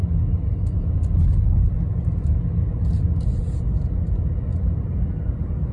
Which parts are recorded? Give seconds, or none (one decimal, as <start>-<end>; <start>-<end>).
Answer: 0.0-5.7